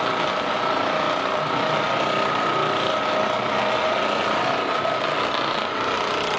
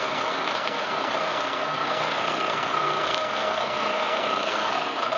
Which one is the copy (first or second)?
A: second